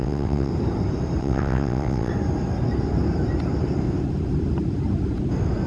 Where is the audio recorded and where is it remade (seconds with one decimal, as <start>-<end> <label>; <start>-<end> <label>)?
0.0-0.5 remade; 0.5-1.2 recorded; 1.2-2.1 remade; 2.1-5.7 recorded